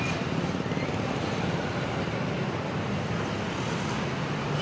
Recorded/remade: recorded